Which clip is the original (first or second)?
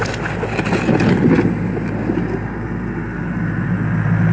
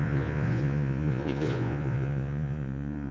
first